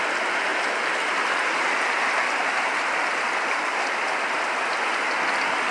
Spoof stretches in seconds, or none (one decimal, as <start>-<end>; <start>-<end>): none